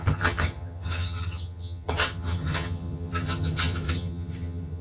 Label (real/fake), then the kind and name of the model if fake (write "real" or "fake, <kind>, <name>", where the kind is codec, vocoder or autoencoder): fake, vocoder, HiFi-GAN